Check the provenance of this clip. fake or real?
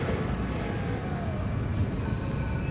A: real